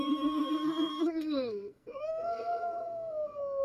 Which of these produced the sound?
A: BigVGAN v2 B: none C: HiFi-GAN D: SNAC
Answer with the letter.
D